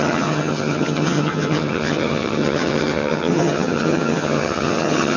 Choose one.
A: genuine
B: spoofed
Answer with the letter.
B